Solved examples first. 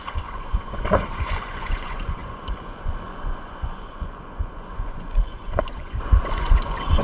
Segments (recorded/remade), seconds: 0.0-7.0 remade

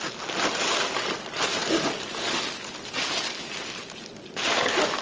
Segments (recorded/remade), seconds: 0.0-5.0 recorded

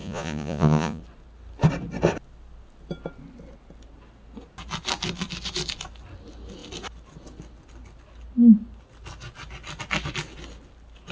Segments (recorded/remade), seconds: 0.0-1.0 remade; 1.0-11.1 recorded

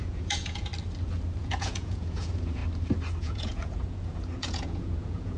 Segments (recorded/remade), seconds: 0.0-0.7 remade; 0.7-1.4 recorded; 1.4-2.6 remade; 2.6-3.2 recorded; 3.2-5.4 remade

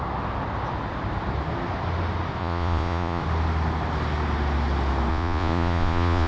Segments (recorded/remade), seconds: 0.0-2.4 recorded; 2.4-3.2 remade; 3.2-5.1 recorded; 5.1-6.3 remade

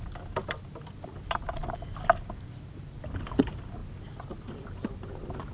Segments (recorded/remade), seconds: 0.0-5.5 recorded

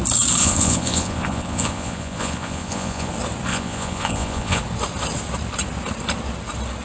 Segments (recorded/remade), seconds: 0.0-0.4 recorded; 0.4-3.1 remade; 3.1-3.5 recorded; 3.5-4.6 remade; 4.6-6.8 recorded